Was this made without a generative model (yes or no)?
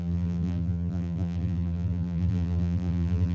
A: no